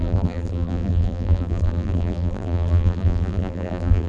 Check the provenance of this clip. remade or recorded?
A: remade